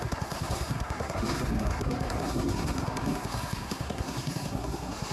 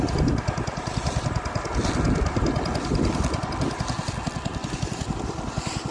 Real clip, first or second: second